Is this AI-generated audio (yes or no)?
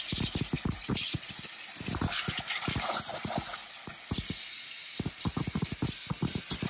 no